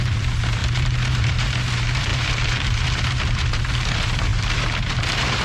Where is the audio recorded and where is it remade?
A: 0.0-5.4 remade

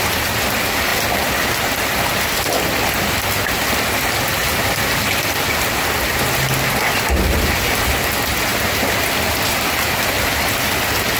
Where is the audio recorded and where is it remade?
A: 0.0-11.2 recorded

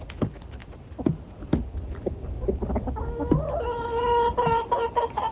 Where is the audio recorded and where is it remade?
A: 0.0-0.6 recorded; 0.6-2.1 remade; 2.1-5.3 recorded

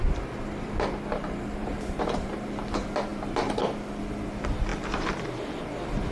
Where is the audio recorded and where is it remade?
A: 0.0-1.6 recorded; 1.6-2.3 remade; 2.3-6.1 recorded

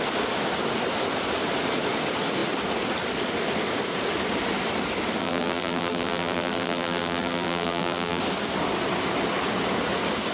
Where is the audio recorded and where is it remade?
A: 0.0-5.2 recorded; 5.2-8.2 remade; 8.2-10.3 recorded

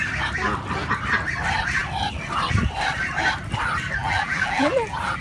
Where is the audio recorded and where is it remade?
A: 0.0-4.0 recorded; 4.0-5.2 remade

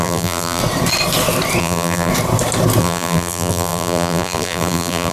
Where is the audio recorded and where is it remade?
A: 0.0-0.6 remade; 0.6-1.6 recorded; 1.6-2.1 remade; 2.1-2.8 recorded; 2.8-5.1 remade